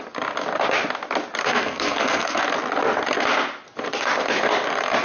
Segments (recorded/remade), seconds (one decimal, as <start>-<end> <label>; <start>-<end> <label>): 0.0-1.4 recorded; 1.4-2.4 remade; 2.4-5.0 recorded